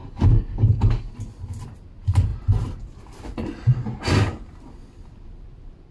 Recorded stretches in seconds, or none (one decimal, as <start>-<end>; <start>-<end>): 1.1-5.9